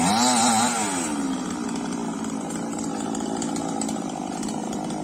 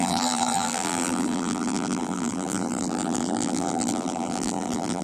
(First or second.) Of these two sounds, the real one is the first